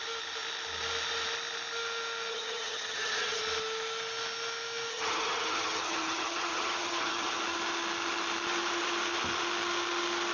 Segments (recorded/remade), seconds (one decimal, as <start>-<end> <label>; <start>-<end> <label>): 0.0-2.3 recorded; 2.3-3.4 remade; 3.4-4.9 recorded; 4.9-7.4 remade; 7.4-10.3 recorded